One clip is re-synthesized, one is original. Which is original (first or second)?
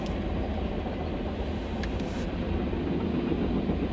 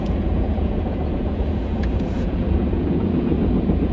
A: first